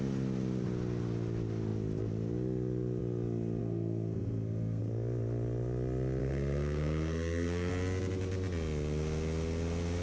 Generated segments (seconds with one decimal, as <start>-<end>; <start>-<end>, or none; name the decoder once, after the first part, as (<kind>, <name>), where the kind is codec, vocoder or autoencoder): 3.6-4.8 (codec, SNAC); 6.2-7.7